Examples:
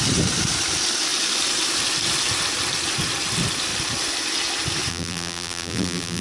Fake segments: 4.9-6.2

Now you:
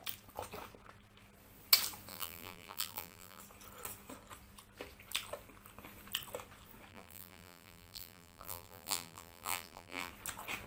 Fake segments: 2.1-3.4; 6.9-10.1

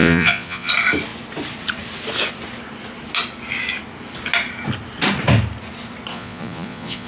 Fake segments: 0.0-0.7; 6.1-7.1

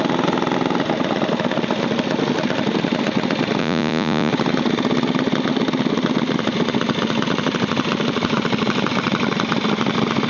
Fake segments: 3.6-4.3

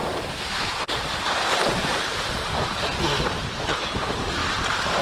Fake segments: 0.0-5.0

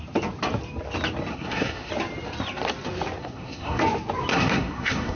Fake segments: 1.3-1.9; 3.2-3.8; 4.3-5.2

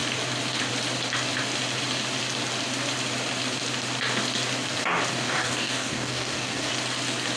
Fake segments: 5.1-6.7

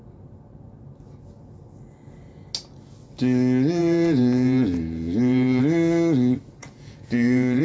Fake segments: 3.8-5.6; 6.6-7.6